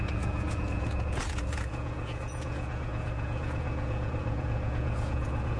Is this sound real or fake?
fake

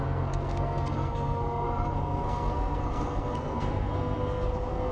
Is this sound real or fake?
fake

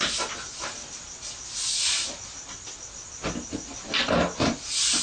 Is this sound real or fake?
real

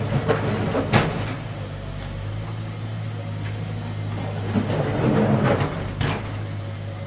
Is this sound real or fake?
real